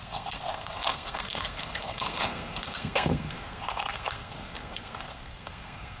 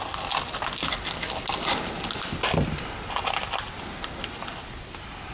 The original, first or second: second